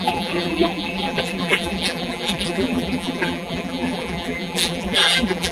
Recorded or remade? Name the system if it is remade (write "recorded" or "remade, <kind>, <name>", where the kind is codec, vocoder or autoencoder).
remade, vocoder, BigVGAN v2